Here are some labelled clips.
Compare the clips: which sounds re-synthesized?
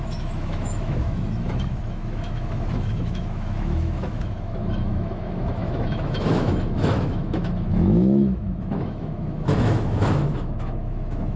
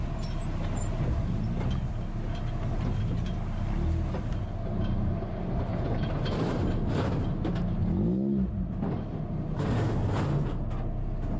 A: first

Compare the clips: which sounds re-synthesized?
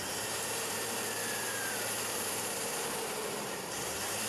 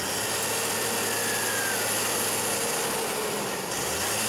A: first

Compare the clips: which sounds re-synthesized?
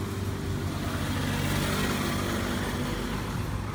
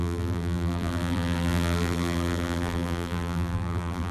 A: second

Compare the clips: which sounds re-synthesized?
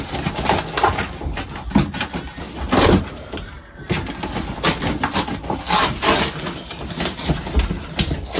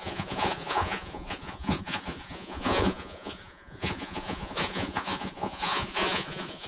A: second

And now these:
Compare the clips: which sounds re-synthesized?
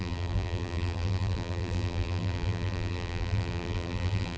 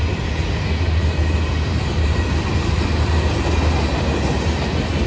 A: first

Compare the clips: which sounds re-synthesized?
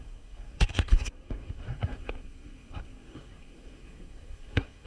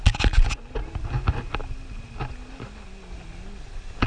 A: first